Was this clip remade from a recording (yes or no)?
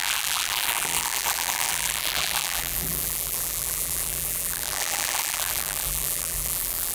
yes